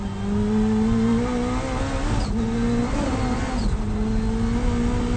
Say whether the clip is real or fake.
real